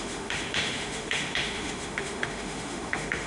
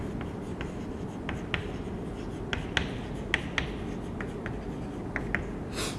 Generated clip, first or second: first